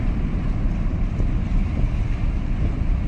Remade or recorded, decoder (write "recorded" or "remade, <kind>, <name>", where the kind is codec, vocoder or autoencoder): recorded